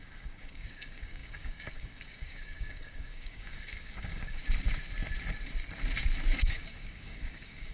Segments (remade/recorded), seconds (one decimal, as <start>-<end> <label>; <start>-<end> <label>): 0.0-4.4 remade; 4.4-6.4 recorded; 6.4-7.7 remade